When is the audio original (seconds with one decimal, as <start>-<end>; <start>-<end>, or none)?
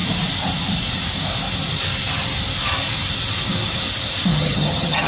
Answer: 0.0-4.3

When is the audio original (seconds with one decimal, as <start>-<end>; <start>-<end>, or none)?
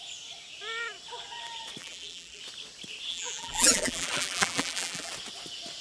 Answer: 0.0-1.8; 2.4-3.1; 5.1-5.8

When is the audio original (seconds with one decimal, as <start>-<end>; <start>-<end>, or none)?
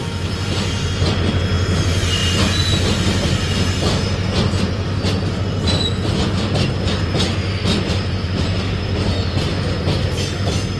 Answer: 0.0-10.8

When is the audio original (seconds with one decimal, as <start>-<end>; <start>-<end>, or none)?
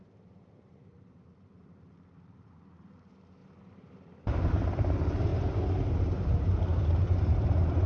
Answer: 5.3-5.9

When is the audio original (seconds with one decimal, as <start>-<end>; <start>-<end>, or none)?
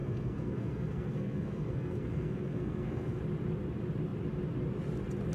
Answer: 3.2-5.3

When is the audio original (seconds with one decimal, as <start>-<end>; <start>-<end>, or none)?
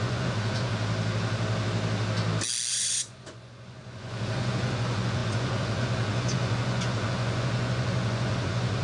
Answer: 0.7-2.7